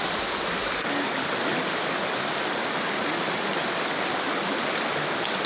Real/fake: real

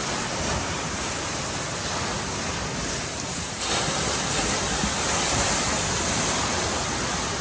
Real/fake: real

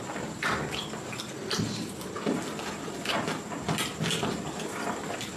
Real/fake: real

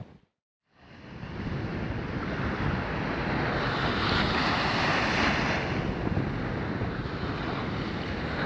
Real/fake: real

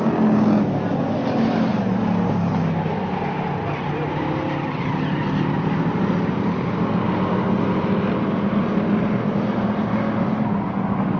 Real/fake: real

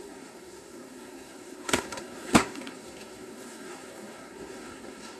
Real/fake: fake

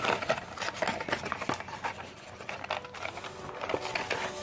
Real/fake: real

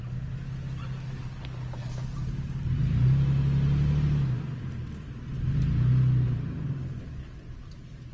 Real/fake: real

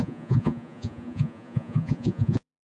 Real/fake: fake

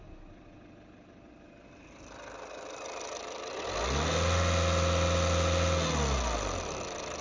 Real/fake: real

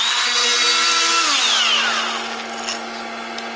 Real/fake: real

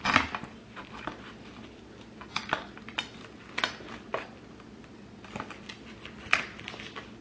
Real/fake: real